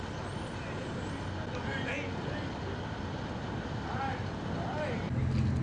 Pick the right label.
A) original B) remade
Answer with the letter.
A